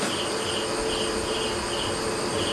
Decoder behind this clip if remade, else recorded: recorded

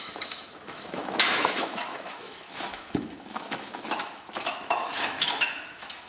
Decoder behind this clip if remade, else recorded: remade, autoencoder, DAC-VAE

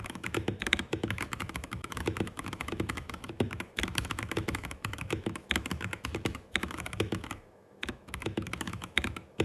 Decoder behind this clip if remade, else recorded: remade, autoencoder, DAC-VAE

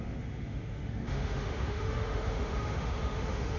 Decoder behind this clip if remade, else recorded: remade, autoencoder, DAC-VAE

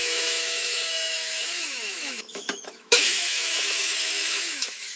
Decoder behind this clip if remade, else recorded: remade, autoencoder, DAC-VAE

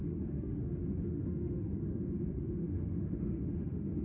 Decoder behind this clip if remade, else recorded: remade, autoencoder, DAC-VAE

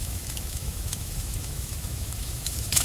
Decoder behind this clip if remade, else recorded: remade, autoencoder, DAC-VAE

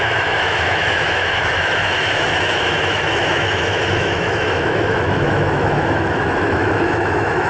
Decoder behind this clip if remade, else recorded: remade, autoencoder, DAC-VAE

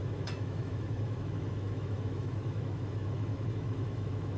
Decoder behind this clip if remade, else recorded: remade, autoencoder, DAC-VAE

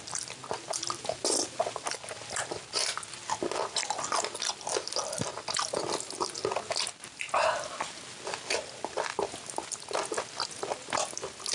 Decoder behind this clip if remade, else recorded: recorded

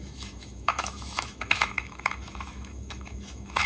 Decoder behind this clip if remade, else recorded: remade, autoencoder, DAC-VAE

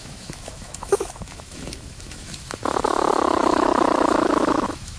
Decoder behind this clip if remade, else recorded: remade, autoencoder, DAC-VAE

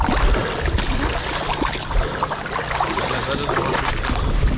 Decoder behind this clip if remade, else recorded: recorded